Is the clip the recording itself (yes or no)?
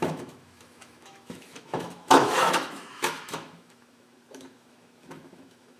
no